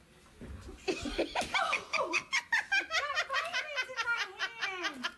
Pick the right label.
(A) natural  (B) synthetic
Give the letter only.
A